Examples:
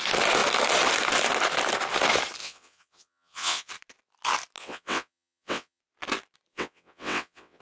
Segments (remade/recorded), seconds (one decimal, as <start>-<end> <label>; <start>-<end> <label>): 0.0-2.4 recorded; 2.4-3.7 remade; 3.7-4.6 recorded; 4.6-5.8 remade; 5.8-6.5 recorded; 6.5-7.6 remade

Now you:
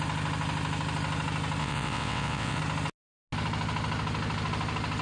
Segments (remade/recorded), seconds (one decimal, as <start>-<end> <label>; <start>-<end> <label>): 0.0-1.6 recorded; 1.6-2.6 remade; 2.6-5.0 recorded

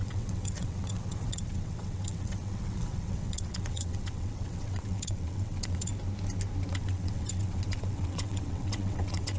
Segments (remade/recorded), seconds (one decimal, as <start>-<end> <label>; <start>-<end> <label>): 0.0-5.9 remade; 5.9-6.7 recorded; 6.7-9.4 remade